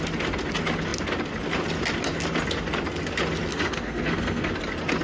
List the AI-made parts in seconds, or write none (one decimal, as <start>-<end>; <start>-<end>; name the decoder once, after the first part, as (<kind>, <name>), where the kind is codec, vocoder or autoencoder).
3.5-4.5 (codec, SNAC)

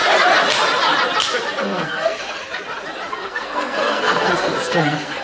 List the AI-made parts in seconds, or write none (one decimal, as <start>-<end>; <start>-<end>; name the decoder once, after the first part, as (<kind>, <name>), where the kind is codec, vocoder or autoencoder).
1.6-2.4 (codec, SNAC); 3.1-5.2

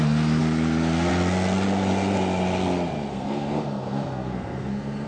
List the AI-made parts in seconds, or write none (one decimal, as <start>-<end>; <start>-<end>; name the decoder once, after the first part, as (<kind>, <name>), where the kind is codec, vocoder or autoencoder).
3.1-5.1 (codec, SNAC)

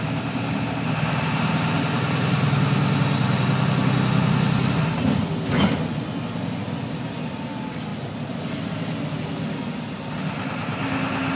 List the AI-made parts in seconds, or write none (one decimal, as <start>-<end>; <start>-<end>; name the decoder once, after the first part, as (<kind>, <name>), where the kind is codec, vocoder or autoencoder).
none